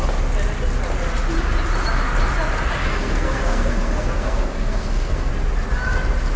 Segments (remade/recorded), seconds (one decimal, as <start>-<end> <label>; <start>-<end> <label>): 0.0-2.8 recorded; 2.8-5.3 remade; 5.3-6.4 recorded